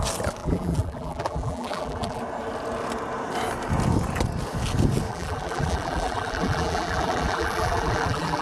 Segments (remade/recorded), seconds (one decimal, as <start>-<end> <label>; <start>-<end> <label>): 0.0-0.4 recorded; 0.4-2.2 remade; 2.2-5.1 recorded; 5.1-8.4 remade